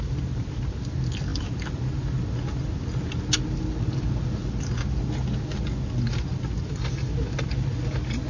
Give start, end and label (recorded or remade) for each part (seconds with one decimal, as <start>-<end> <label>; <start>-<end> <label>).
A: 0.0-8.3 recorded